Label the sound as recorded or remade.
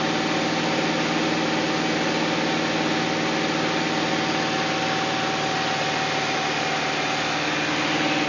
recorded